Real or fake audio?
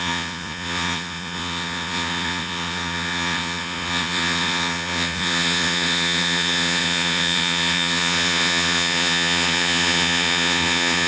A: fake